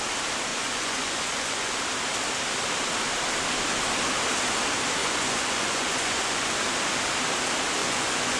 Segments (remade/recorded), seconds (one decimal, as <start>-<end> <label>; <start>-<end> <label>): 0.0-0.5 recorded; 0.5-1.7 remade; 1.7-5.0 recorded; 5.0-6.5 remade; 6.5-7.8 recorded; 7.8-8.4 remade